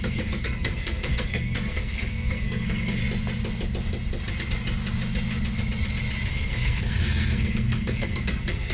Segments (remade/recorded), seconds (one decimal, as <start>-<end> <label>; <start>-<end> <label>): 0.0-3.0 remade; 3.0-6.3 recorded; 6.3-8.7 remade